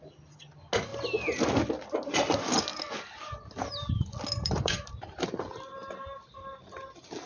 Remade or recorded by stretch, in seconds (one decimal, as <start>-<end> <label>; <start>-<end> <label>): 0.0-7.3 recorded